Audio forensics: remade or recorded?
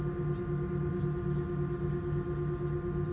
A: recorded